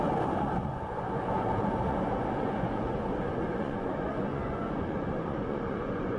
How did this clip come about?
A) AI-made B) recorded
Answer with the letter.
A